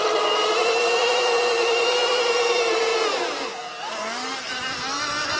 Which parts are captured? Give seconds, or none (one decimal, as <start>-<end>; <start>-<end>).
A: 2.9-3.8